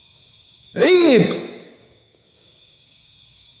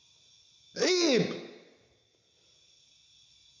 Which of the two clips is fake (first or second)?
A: first